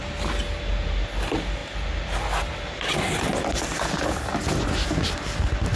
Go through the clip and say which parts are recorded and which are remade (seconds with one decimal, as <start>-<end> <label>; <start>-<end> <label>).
0.0-5.8 recorded